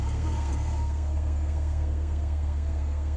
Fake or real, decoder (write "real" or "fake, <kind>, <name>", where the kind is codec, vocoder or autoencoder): fake, codec, SNAC